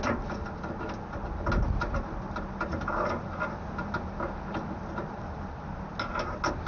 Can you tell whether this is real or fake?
real